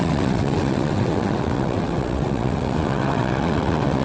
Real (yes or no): no